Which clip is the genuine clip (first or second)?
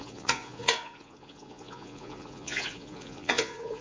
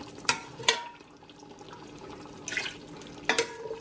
second